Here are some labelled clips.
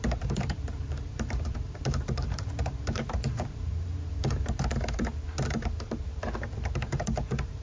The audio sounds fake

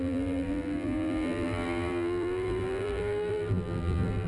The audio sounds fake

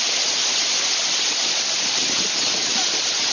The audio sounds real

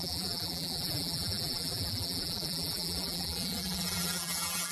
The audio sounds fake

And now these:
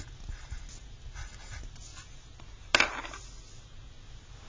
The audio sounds real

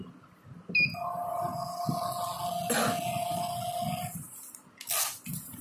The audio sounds real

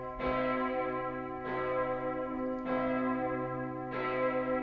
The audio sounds real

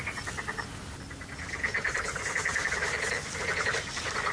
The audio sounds real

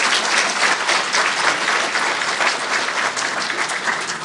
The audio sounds real